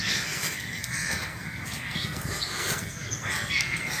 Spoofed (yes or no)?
yes